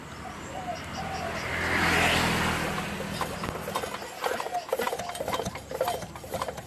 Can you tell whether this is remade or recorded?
recorded